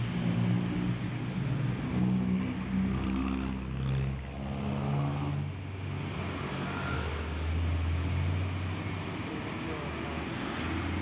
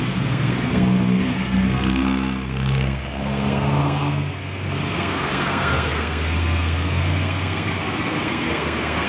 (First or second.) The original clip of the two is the first